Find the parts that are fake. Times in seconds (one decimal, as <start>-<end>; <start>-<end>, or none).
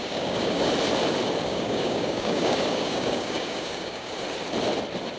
0.0-0.7; 1.5-4.1